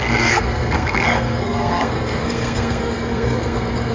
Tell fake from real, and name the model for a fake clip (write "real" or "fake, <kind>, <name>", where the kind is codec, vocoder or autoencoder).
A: fake, codec, SNAC